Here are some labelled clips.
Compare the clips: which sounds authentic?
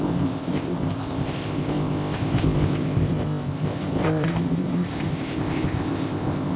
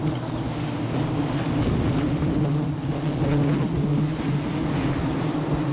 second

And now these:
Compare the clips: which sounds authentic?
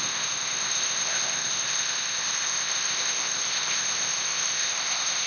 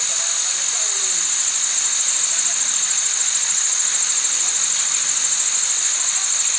second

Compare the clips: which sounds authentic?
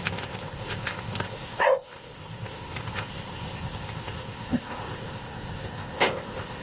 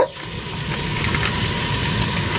second